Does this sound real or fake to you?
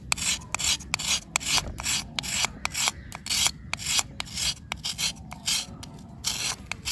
real